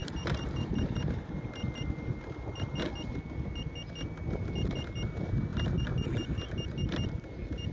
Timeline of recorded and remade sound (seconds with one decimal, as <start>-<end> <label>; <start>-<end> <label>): 0.0-0.7 remade; 0.7-7.7 recorded